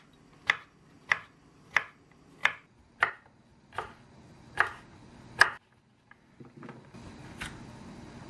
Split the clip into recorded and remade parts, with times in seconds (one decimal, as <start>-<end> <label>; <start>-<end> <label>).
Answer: 0.0-2.4 recorded; 2.4-3.1 remade; 3.1-3.5 recorded; 3.5-4.0 remade; 4.0-8.3 recorded